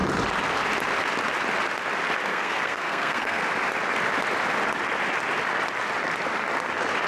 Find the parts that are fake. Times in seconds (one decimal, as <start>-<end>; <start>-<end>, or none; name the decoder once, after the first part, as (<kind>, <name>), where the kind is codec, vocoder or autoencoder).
2.3-3.4 (codec, SNAC)